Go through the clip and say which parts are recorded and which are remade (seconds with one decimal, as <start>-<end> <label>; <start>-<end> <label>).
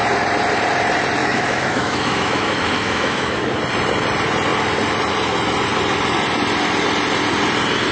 0.0-1.2 recorded; 1.2-3.5 remade; 3.5-7.9 recorded